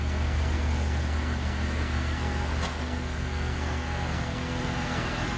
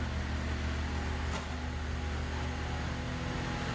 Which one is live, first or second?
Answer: second